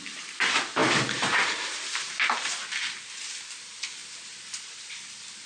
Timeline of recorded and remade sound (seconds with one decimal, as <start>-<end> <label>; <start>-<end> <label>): 0.0-0.8 remade; 0.8-3.6 recorded; 3.6-4.0 remade; 4.0-5.5 recorded